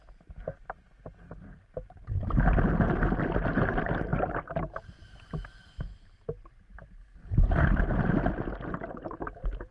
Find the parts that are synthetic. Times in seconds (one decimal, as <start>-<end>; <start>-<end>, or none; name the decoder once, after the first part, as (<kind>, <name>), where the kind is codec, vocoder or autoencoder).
none